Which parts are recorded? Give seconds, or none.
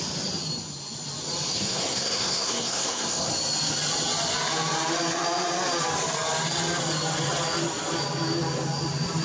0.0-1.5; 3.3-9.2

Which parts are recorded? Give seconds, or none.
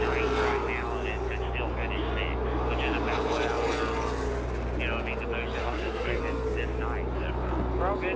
0.0-5.6; 6.2-8.2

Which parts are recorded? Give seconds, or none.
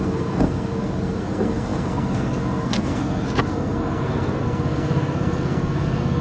none